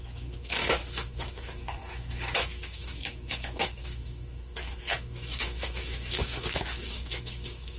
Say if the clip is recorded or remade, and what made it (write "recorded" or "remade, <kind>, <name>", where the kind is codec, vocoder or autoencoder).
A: remade, autoencoder, DAC-VAE